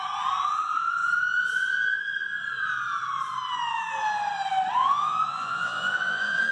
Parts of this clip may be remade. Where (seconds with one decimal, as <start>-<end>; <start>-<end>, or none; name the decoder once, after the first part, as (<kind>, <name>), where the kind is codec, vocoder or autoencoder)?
4.8-6.5 (vocoder, Vocos)